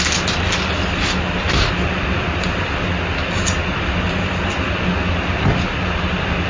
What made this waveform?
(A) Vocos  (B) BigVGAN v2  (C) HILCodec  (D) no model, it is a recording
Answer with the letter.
D